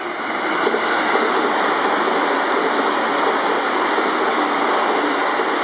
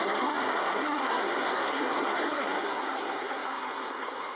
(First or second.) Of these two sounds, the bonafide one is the first